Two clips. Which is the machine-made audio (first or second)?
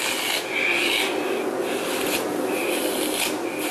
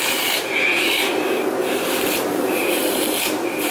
second